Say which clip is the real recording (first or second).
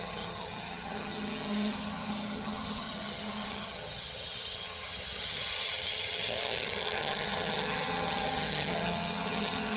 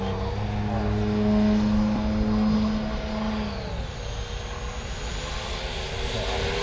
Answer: second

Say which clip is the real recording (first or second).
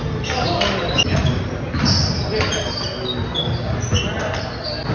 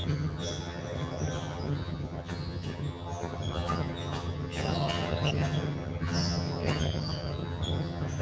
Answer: first